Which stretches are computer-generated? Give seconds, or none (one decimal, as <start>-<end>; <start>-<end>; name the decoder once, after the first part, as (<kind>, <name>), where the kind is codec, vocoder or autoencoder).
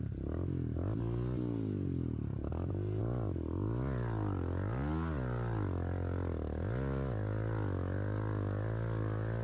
none